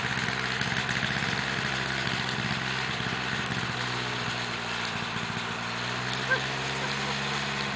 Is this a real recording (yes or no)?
yes